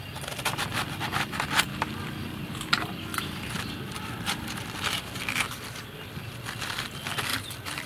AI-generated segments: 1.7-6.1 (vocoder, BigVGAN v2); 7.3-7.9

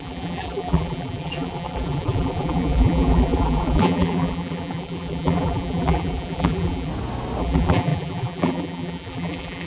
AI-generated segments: 0.0-6.9 (vocoder, BigVGAN v2); 7.4-9.7

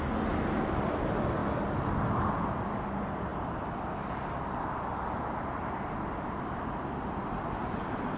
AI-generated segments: 1.4-2.8 (vocoder, BigVGAN v2); 3.3-6.6; 7.6-8.2

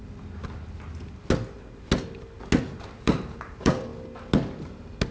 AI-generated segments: 3.0-3.9 (vocoder, BigVGAN v2)